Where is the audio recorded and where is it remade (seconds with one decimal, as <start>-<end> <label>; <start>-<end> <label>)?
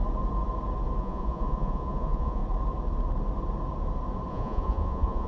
0.0-1.0 recorded; 1.0-2.4 remade; 2.4-4.3 recorded; 4.3-5.3 remade